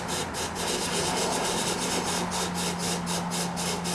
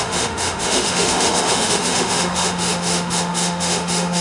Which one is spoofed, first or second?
second